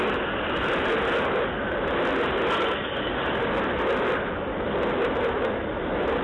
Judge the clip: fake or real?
real